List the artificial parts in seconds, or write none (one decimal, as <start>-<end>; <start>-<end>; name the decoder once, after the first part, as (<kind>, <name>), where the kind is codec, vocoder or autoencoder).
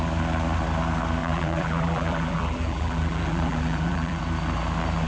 1.2-4.2 (vocoder, BigVGAN v2)